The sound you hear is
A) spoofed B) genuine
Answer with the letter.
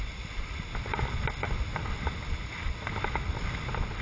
B